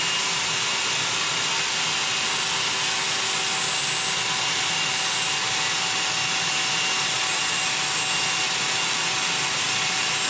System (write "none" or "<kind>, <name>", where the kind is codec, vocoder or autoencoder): none